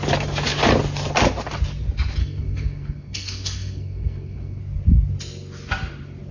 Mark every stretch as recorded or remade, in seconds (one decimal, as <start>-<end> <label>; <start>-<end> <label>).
0.0-2.2 recorded; 2.2-4.6 remade; 4.6-6.3 recorded